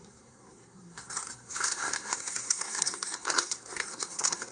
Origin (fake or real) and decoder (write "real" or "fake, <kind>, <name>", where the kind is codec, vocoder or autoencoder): fake, codec, SNAC